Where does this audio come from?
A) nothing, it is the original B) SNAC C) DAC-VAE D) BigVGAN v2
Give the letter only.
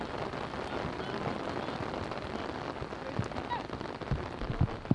A